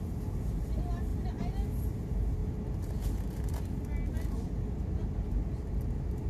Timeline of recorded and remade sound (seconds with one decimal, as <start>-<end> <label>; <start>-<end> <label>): 0.0-1.1 remade; 1.1-1.7 recorded; 1.7-2.4 remade; 2.4-6.3 recorded